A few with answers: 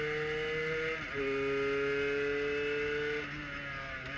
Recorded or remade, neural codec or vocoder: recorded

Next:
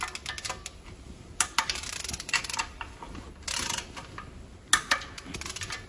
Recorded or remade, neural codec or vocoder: recorded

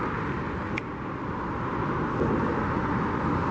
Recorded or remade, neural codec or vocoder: recorded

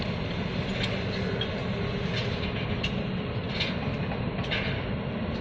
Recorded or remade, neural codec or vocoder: recorded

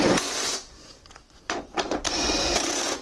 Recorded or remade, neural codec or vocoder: remade, vocoder, Vocos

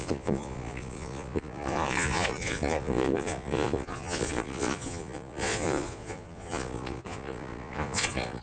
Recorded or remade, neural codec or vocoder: remade, vocoder, Vocos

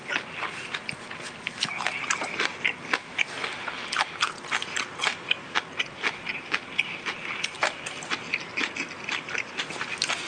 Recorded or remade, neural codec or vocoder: recorded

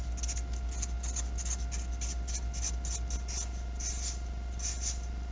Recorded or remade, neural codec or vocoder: recorded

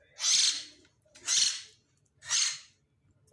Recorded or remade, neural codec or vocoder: recorded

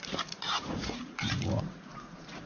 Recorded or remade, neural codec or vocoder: remade, vocoder, Vocos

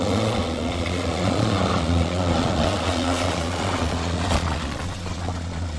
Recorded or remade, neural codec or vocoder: remade, vocoder, Vocos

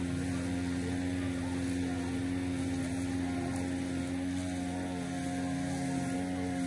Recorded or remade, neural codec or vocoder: recorded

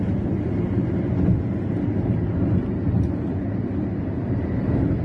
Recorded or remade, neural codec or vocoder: recorded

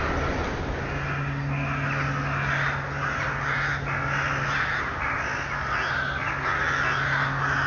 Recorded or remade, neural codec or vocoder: recorded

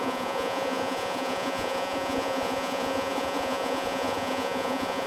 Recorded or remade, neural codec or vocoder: remade, vocoder, Vocos